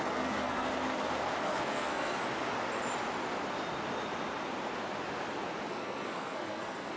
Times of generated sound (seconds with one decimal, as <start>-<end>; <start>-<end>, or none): 0.0-0.7; 1.4-2.2; 5.7-7.0

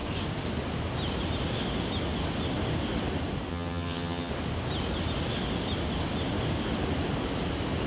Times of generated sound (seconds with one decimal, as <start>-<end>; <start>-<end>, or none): 3.5-4.3

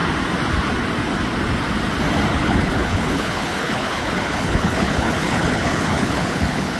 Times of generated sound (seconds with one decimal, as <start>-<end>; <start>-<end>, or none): 2.3-6.8

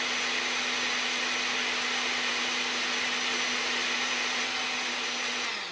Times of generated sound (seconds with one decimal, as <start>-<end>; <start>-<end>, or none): none